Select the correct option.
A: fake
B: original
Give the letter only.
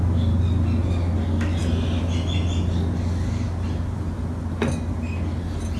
B